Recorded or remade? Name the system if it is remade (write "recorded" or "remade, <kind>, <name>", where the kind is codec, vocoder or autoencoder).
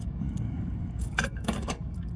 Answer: remade, codec, DAC